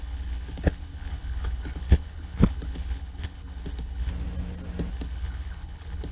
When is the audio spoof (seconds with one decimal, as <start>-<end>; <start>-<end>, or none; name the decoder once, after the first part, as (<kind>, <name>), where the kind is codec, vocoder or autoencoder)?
0.0-4.1 (codec, HILCodec); 4.9-6.1

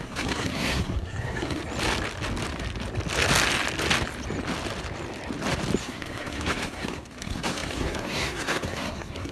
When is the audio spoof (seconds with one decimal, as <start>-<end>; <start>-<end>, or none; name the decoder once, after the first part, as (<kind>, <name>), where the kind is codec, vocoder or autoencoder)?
0.0-1.6 (codec, SNAC); 5.8-9.3

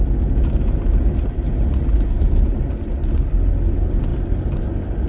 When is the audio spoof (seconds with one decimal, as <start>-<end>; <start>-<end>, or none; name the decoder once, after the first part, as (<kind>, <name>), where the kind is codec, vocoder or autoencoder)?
none

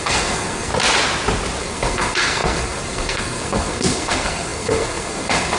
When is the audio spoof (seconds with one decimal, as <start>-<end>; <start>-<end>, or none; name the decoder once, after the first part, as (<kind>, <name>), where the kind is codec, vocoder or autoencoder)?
0.0-0.7 (codec, SNAC); 1.6-5.6